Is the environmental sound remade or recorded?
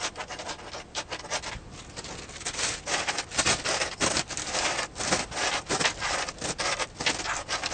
recorded